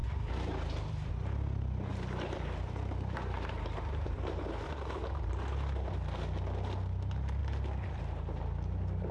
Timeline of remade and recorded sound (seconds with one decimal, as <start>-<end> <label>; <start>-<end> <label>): 0.0-1.1 remade; 1.1-1.9 recorded; 1.9-4.4 remade; 4.4-7.4 recorded; 7.4-8.4 remade; 8.4-9.1 recorded